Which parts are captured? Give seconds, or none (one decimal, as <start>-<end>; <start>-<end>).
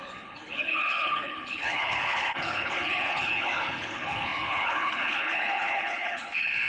none